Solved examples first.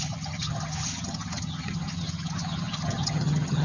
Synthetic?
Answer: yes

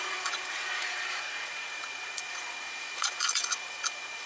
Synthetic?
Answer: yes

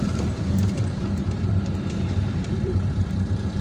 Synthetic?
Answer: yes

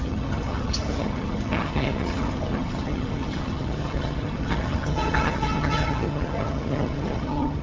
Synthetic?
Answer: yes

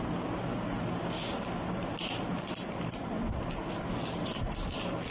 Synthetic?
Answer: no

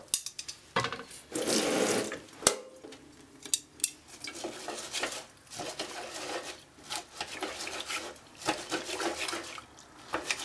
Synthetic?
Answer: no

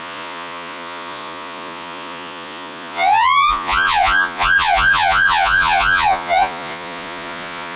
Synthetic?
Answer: yes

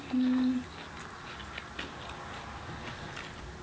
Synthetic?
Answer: no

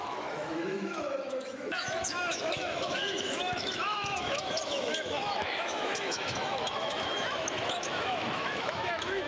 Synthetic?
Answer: yes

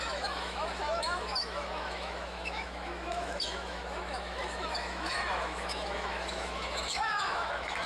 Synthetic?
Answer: yes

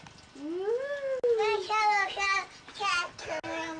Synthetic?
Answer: no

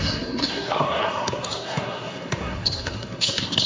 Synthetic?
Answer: yes